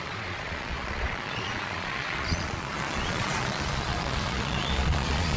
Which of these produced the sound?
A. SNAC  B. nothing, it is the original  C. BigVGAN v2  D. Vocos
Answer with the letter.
D